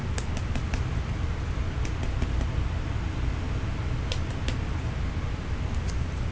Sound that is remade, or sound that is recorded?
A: recorded